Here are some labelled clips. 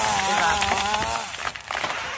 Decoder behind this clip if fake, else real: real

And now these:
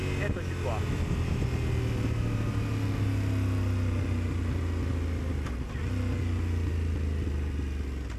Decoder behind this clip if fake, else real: real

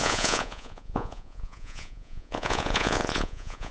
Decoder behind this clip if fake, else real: fake, vocoder, Vocos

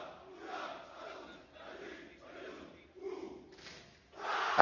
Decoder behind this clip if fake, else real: real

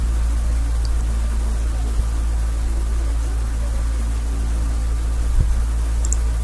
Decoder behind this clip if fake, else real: real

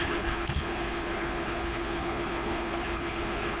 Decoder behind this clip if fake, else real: fake, codec, HILCodec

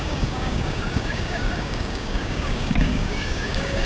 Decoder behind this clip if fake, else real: fake, codec, DAC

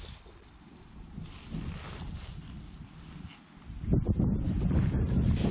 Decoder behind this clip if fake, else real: real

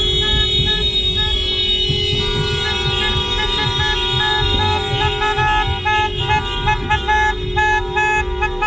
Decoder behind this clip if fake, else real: real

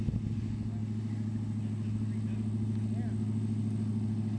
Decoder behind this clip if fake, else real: real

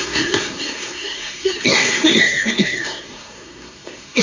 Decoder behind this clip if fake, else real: fake, codec, SNAC